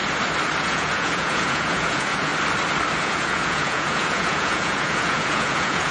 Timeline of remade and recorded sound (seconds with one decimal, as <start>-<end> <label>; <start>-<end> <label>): 0.0-0.6 recorded; 0.6-2.3 remade; 2.3-3.0 recorded; 3.0-5.9 remade